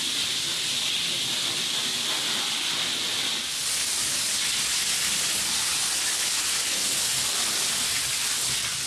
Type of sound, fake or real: real